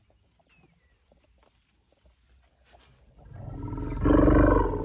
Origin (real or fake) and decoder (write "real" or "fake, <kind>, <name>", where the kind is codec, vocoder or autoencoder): real